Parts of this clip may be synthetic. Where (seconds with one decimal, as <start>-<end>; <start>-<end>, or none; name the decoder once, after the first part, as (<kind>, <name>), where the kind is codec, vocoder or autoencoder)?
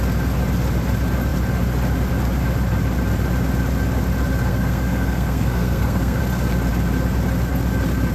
4.5-6.2 (codec, SNAC)